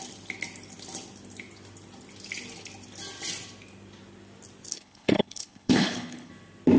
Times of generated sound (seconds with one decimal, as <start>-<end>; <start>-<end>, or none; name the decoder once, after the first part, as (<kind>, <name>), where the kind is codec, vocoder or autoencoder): 4.7-6.3 (codec, HILCodec)